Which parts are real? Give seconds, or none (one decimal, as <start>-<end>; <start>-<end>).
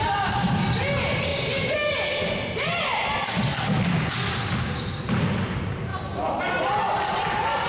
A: 0.0-7.7